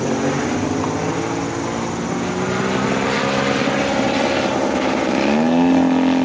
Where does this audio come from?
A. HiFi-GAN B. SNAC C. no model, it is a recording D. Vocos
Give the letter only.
C